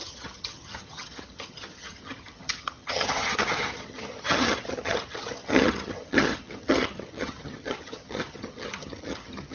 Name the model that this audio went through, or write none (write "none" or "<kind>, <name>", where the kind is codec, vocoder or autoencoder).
vocoder, HiFi-GAN